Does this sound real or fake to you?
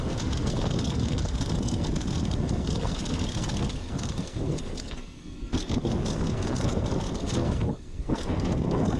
fake